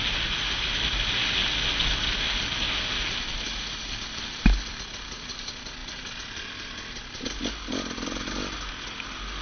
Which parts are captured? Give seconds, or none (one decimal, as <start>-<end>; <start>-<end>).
0.0-5.8; 7.4-9.4